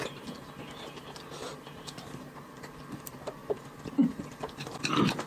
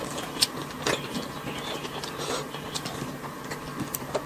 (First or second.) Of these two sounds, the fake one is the first